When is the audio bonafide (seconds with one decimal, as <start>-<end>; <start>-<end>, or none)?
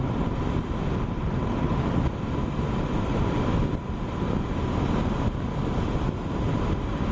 0.0-7.1